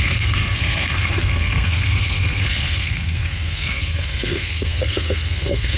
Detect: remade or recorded remade